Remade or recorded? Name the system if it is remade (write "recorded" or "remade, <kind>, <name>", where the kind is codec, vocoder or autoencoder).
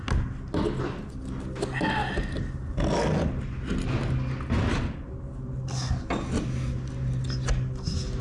recorded